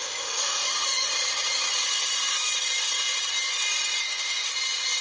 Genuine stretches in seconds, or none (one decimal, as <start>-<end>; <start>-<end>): 1.1-4.0; 4.5-5.0